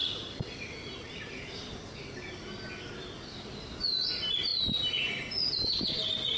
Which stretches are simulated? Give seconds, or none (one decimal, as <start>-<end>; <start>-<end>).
none

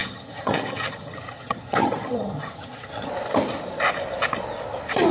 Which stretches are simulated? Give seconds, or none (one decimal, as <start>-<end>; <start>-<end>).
0.0-3.1

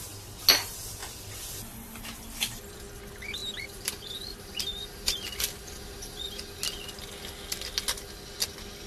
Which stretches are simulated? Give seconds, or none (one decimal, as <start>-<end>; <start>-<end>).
3.4-6.4